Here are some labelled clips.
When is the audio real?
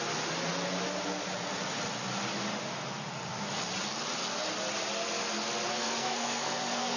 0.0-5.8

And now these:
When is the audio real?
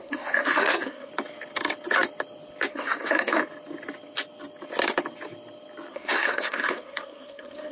1.1-2.7; 3.4-5.9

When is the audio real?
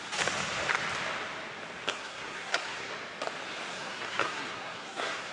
0.0-1.9; 2.9-3.7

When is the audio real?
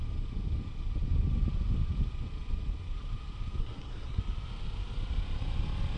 0.0-3.6; 4.2-6.0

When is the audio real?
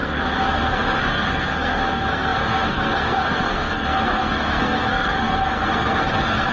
none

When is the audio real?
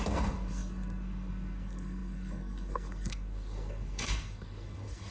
none